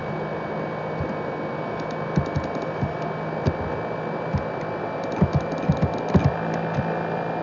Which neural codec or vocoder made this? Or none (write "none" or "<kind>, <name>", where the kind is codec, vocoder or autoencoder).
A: none